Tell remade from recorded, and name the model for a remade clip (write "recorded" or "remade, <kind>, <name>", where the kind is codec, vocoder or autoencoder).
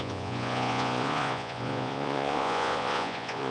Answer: remade, vocoder, Vocos